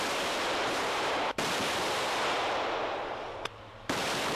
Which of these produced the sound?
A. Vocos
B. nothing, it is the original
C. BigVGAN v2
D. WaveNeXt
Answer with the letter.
C